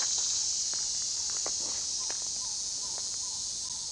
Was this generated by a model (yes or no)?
no